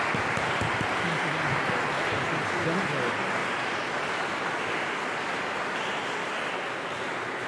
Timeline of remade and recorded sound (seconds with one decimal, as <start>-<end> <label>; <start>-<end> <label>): 0.0-7.5 recorded